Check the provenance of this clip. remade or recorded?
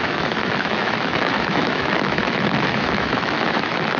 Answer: remade